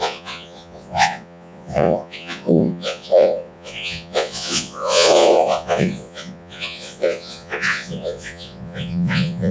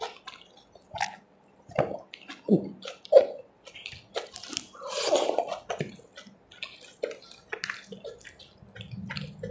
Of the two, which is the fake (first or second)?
first